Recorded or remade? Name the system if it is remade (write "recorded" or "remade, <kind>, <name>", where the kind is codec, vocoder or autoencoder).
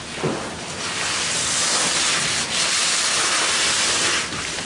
recorded